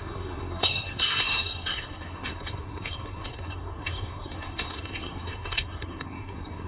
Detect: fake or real fake